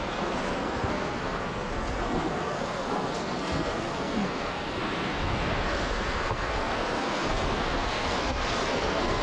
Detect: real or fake fake